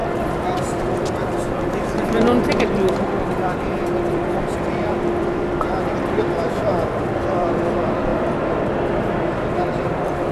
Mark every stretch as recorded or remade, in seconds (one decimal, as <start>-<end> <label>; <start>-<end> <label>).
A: 0.0-0.6 recorded; 0.6-8.1 remade; 8.1-9.5 recorded; 9.5-10.3 remade